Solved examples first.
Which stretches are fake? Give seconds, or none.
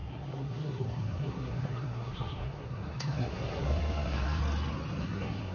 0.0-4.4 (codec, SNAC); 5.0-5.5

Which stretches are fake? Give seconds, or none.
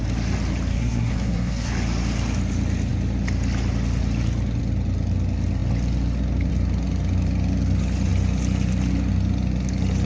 0.7-1.7 (codec, SNAC)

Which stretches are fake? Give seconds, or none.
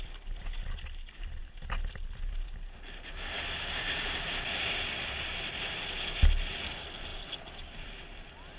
none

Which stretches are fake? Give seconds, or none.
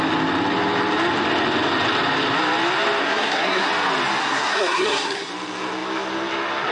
3.0-3.7 (codec, SNAC); 4.2-5.3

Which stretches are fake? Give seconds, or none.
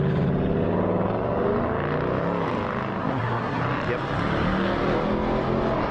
3.0-3.6 (codec, SNAC)